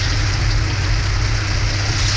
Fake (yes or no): no